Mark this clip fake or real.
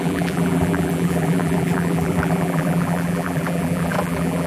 fake